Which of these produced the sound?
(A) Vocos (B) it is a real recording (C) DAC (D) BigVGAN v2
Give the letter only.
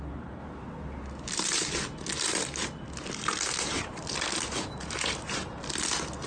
B